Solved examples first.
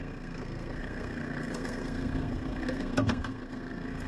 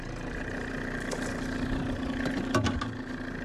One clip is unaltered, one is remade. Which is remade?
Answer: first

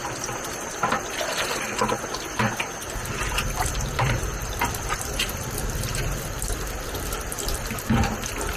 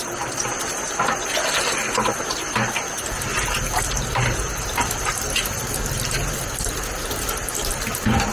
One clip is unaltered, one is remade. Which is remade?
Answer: first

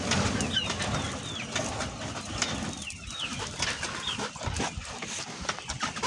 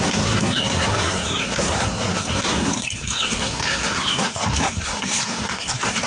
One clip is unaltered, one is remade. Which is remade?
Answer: second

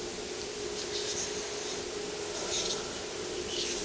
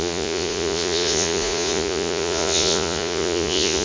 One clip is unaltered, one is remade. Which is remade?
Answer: second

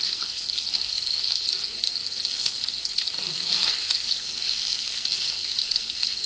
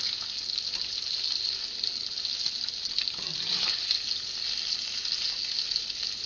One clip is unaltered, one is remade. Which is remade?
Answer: first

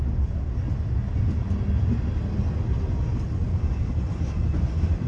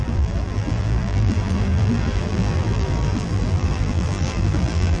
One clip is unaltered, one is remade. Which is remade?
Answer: second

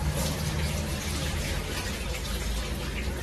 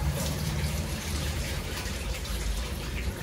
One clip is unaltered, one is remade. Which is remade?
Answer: second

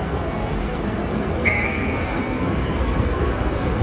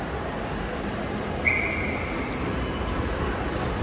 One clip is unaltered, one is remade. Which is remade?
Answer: first